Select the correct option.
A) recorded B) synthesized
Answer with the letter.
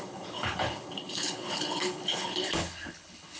B